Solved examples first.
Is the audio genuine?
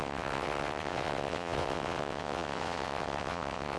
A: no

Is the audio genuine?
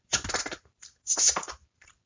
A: yes